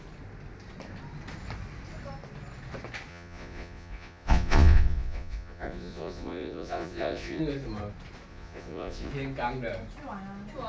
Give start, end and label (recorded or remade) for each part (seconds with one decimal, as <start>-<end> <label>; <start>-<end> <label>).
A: 0.0-3.1 recorded; 3.1-7.4 remade; 7.4-8.3 recorded; 8.3-9.1 remade; 9.1-10.7 recorded